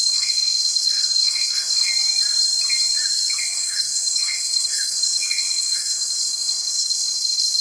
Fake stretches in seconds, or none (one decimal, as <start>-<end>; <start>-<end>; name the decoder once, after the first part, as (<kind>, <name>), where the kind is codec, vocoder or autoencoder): 0.0-1.9 (codec, SNAC); 3.4-7.6